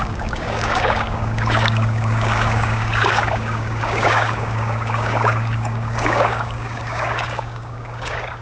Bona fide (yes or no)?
no